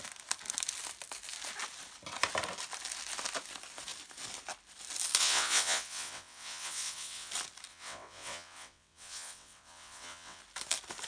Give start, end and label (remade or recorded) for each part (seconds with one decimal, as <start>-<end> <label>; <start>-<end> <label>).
0.0-5.2 recorded; 5.2-7.3 remade; 7.3-7.7 recorded; 7.7-10.4 remade; 10.4-11.1 recorded

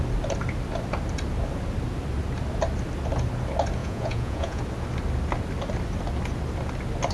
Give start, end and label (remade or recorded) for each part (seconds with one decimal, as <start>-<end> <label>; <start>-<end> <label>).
0.0-3.8 recorded; 3.8-4.6 remade; 4.6-7.1 recorded

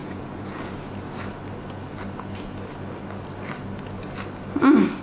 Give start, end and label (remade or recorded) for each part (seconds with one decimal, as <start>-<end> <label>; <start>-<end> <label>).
0.0-0.7 remade; 0.7-5.0 recorded

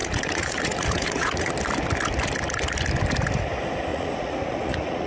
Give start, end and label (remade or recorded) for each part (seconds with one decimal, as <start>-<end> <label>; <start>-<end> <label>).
0.0-1.5 remade; 1.5-3.9 recorded; 3.9-5.1 remade